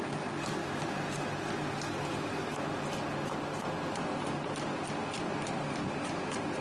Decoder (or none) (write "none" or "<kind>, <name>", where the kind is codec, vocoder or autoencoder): none